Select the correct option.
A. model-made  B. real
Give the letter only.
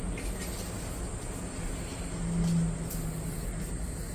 B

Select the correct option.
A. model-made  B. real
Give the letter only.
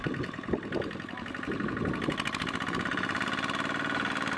B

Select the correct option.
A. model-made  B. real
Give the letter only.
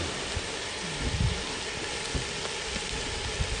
B